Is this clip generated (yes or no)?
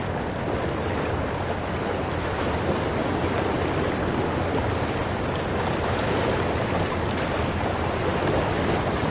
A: no